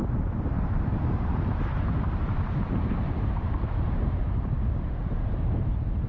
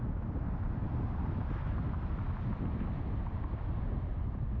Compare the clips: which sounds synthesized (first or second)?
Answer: first